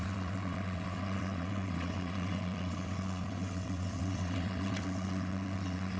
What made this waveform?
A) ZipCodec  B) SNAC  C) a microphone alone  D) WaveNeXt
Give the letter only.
D